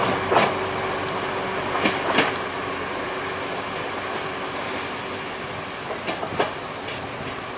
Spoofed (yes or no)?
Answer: no